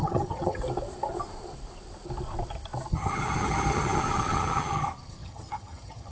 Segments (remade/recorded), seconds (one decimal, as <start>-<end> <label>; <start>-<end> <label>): 0.0-0.6 remade; 0.6-2.9 recorded; 2.9-6.1 remade